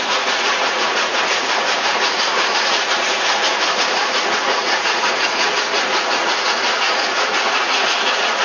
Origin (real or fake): fake